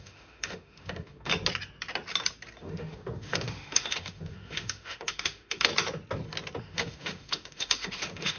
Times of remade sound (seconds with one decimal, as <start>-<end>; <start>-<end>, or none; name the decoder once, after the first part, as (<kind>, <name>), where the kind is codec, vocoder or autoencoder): 0.0-1.3 (autoencoder, DAC-VAE); 2.6-5.7; 6.6-8.4